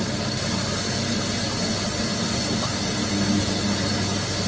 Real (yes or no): yes